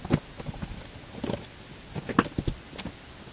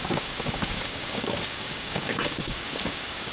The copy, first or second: second